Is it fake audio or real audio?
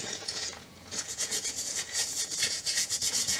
fake